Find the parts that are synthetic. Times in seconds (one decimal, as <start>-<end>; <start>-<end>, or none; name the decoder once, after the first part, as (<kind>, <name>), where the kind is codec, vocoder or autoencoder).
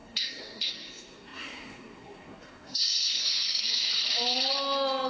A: 0.0-3.9 (codec, SNAC)